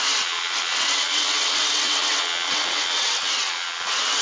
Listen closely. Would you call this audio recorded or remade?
remade